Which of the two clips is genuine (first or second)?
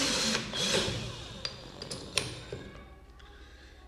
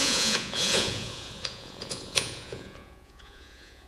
first